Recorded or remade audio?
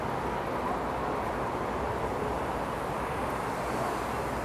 recorded